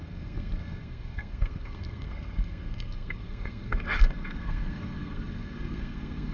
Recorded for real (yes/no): no